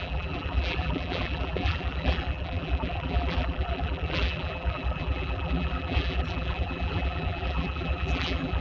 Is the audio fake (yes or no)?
yes